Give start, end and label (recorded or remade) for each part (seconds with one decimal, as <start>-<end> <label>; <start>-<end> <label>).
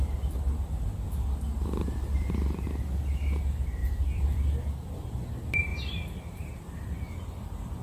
0.0-3.8 recorded; 3.8-5.2 remade; 5.2-5.7 recorded; 5.7-6.6 remade; 6.6-7.8 recorded